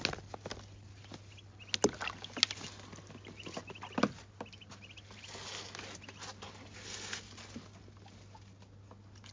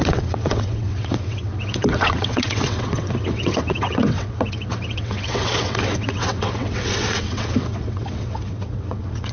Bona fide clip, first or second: first